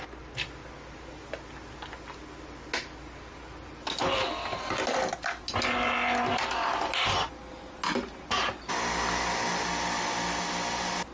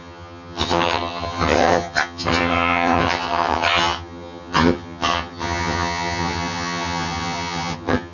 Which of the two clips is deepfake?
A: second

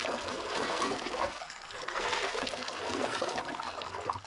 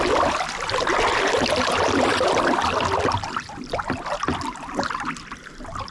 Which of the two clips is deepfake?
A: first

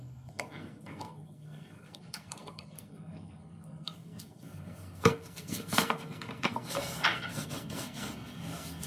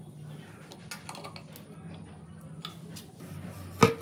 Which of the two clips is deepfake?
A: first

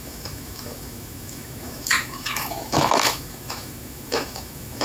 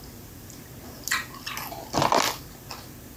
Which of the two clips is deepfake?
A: first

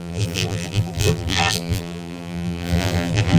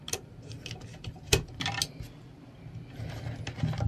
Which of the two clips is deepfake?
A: first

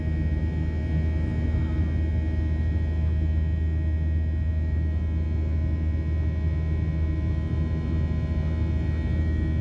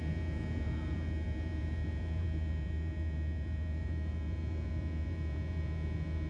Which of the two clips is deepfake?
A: second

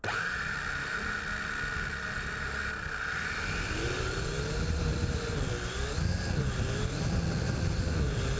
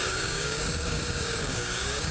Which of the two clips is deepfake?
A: second